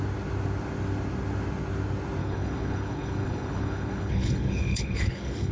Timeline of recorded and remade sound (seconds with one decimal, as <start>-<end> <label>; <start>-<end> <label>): 0.0-2.2 recorded; 2.2-5.5 remade